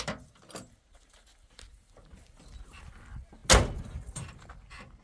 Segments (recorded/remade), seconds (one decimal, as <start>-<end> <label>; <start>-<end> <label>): 0.0-5.0 recorded